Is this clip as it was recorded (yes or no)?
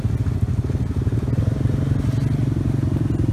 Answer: yes